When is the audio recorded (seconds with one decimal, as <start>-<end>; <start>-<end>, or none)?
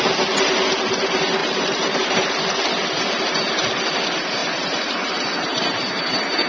0.0-1.4; 2.3-4.4; 6.1-6.5